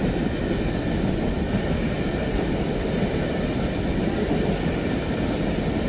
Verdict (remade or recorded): recorded